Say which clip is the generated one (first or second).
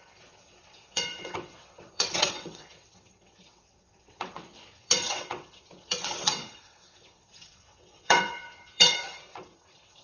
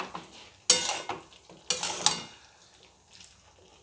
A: first